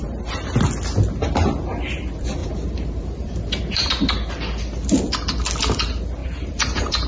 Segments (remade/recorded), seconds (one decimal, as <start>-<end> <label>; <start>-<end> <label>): 0.0-2.4 recorded; 2.4-3.9 remade; 3.9-6.2 recorded; 6.2-7.1 remade